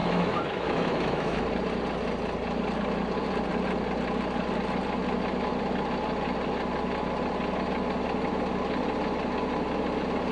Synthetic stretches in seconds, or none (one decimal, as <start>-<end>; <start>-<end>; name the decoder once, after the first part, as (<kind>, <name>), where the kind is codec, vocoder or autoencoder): 0.0-1.4 (autoencoder, DAC-VAE)